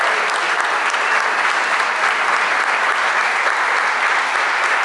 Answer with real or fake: real